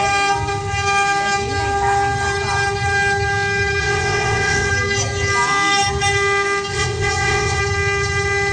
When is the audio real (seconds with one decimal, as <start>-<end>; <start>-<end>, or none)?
0.0-3.8; 4.7-6.7; 7.6-8.5